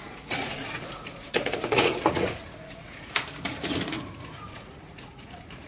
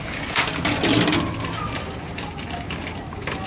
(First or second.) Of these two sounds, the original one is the second